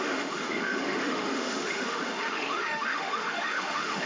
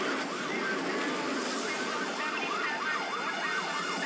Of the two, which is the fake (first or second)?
first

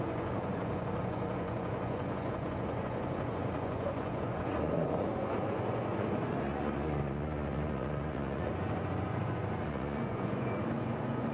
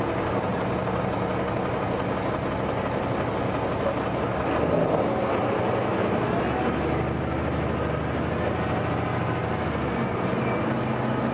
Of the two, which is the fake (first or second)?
first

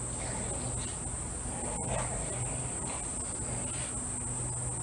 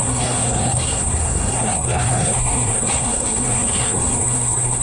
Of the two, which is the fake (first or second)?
second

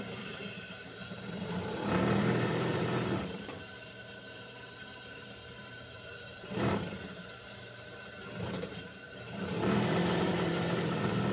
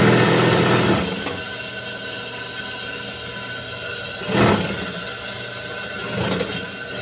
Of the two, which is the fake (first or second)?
first